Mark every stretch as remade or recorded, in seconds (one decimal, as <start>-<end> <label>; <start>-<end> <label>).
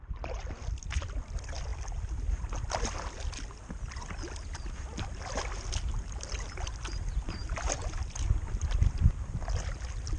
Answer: 0.0-10.2 recorded